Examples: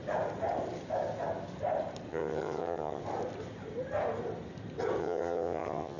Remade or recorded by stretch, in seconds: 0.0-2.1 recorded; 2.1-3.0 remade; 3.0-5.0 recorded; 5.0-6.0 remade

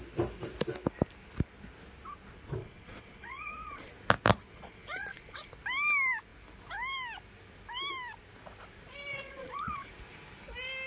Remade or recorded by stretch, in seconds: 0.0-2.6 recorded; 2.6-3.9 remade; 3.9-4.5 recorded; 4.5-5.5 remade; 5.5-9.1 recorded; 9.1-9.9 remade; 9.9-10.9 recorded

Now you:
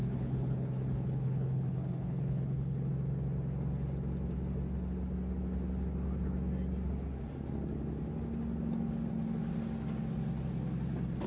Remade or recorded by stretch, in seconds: 0.0-2.9 remade; 2.9-11.3 recorded

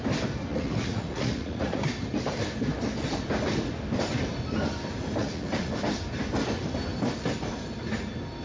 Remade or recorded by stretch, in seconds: 0.0-0.5 recorded; 0.5-1.8 remade; 1.8-5.2 recorded; 5.2-5.7 remade; 5.7-8.4 recorded

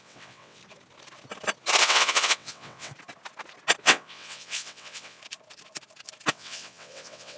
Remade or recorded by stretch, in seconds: 0.0-0.6 remade; 0.6-1.8 recorded; 1.8-2.9 remade; 2.9-3.8 recorded; 3.8-5.2 remade; 5.2-6.3 recorded; 6.3-7.4 remade